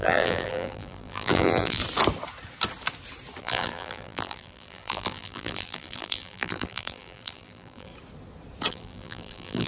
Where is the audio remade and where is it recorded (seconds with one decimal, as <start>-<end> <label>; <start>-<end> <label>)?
0.0-1.8 remade; 1.8-3.4 recorded; 3.4-7.9 remade; 7.9-8.7 recorded; 8.7-9.7 remade